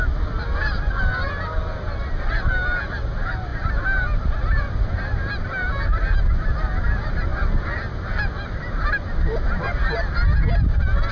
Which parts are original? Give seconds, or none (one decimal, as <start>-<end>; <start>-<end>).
0.0-11.1